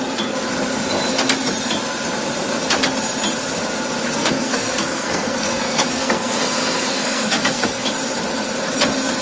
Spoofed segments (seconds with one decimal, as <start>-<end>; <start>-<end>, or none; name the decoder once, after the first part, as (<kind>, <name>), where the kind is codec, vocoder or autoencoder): 4.2-7.9 (codec, SNAC)